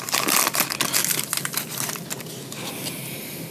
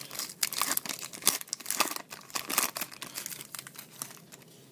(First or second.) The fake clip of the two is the first